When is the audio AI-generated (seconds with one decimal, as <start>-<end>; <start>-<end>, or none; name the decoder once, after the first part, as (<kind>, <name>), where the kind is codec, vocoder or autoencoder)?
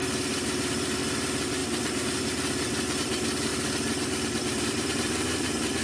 0.0-1.0 (vocoder, BigVGAN v2); 1.6-2.2; 3.5-5.8